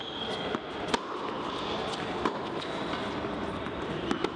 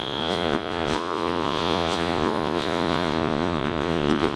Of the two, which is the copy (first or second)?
second